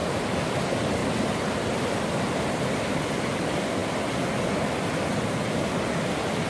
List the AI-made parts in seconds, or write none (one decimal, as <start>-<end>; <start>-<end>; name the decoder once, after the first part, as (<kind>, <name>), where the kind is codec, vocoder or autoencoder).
none